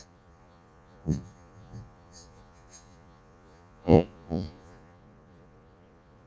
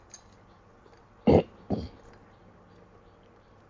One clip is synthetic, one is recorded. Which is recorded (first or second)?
second